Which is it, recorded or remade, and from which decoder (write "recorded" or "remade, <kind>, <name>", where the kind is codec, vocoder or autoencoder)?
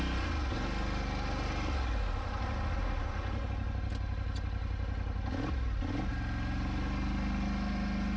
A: recorded